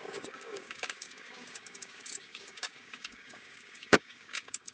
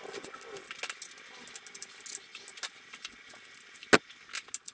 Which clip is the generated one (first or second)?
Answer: first